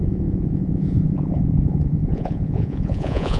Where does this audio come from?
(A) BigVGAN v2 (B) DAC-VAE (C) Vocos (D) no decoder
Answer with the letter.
C